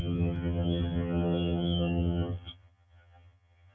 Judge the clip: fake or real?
fake